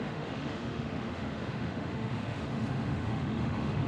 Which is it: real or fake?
fake